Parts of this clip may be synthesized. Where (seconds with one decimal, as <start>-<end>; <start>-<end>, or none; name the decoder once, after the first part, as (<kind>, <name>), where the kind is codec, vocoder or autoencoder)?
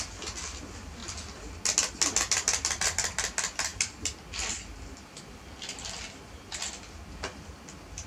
none